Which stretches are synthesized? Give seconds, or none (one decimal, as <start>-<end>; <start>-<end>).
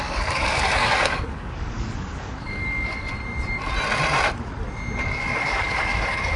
0.0-3.1; 5.0-6.4